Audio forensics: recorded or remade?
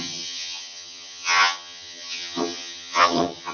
remade